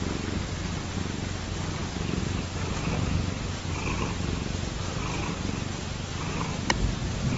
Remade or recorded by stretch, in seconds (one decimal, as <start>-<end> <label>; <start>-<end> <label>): 0.0-5.2 recorded; 5.2-6.1 remade; 6.1-7.4 recorded